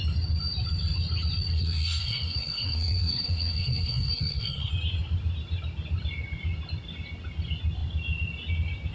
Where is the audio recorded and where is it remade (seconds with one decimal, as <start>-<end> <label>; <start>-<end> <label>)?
0.0-1.5 recorded; 1.5-4.7 remade; 4.7-8.9 recorded